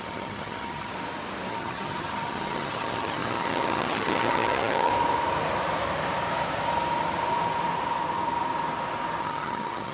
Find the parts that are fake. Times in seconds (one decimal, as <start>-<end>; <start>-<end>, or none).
0.0-0.9; 1.5-4.9; 9.2-9.9